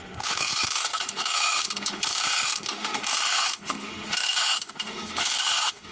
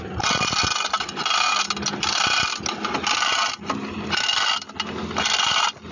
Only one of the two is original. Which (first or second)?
second